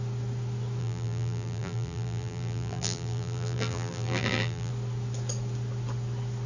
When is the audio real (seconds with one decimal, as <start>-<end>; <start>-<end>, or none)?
0.0-0.8; 4.7-6.5

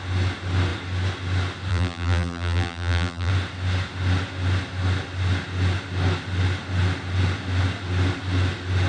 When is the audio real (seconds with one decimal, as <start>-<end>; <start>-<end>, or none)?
0.0-1.7; 3.3-8.9

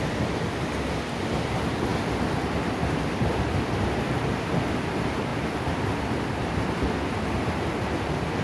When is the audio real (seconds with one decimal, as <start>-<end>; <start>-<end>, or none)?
0.0-8.4

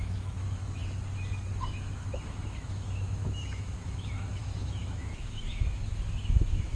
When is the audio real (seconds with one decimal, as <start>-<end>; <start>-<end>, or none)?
0.8-1.7

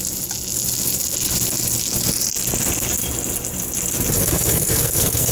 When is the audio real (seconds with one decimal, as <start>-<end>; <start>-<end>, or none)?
0.0-4.2

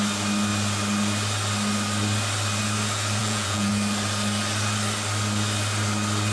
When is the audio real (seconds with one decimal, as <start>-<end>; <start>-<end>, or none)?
0.0-3.2; 3.7-6.3

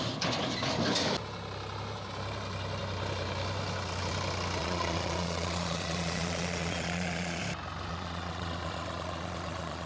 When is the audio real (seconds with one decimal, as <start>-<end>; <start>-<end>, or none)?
0.0-4.6; 7.4-7.9

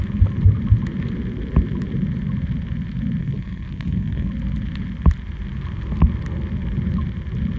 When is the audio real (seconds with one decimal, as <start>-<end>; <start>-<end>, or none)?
0.0-3.2; 4.3-7.6